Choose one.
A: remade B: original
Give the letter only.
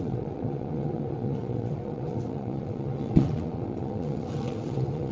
A